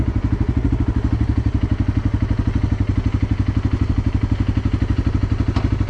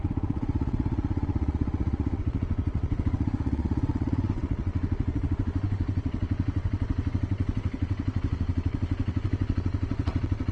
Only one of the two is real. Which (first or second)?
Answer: first